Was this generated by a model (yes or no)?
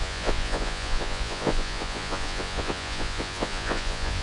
yes